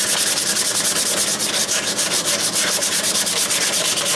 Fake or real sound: real